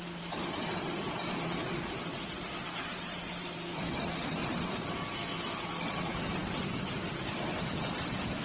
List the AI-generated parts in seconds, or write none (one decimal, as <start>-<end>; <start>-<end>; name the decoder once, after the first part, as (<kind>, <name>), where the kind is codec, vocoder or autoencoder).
0.0-4.4 (vocoder, BigVGAN v2); 5.9-8.4